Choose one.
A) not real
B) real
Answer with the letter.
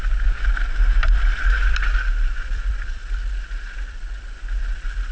B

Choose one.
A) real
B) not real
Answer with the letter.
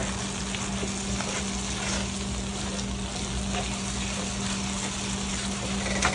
A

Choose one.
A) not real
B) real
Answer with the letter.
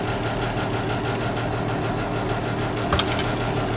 B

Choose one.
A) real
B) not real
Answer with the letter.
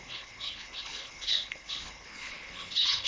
B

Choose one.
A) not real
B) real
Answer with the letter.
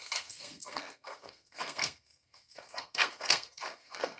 A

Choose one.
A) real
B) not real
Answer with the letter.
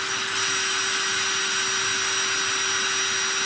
A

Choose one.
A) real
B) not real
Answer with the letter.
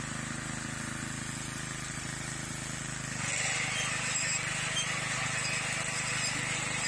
A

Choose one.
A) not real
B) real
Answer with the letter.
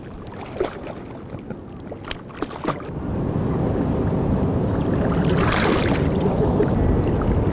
B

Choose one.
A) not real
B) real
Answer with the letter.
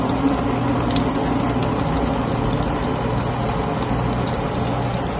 B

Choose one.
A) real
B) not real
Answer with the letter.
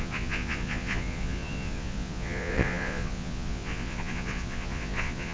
B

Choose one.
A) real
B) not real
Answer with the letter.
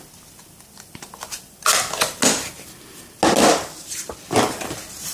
A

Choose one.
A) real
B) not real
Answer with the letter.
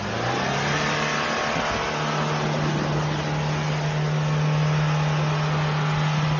A